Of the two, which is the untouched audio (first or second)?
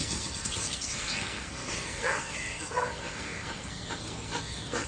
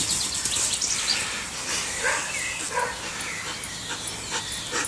second